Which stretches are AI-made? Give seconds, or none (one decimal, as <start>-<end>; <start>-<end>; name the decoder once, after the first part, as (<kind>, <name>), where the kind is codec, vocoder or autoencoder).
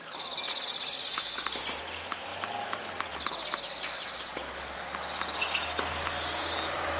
none